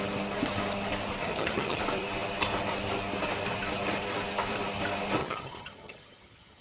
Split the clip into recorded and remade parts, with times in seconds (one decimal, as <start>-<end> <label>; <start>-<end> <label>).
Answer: 0.0-1.2 recorded; 1.2-1.8 remade; 1.8-5.2 recorded; 5.2-6.6 remade